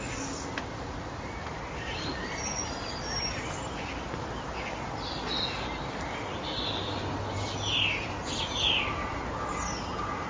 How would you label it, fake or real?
real